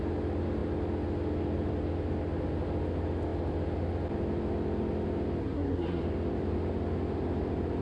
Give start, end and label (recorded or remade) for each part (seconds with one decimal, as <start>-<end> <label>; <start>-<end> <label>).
0.0-5.4 recorded; 5.4-6.0 remade; 6.0-7.8 recorded